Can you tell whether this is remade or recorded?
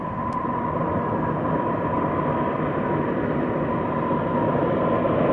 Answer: recorded